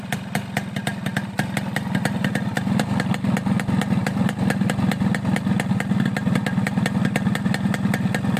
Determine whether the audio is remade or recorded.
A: recorded